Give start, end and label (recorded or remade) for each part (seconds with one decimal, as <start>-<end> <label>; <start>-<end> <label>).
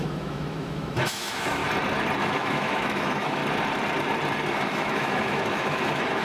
0.0-1.6 remade; 1.6-2.2 recorded; 2.2-3.4 remade; 3.4-4.5 recorded; 4.5-6.2 remade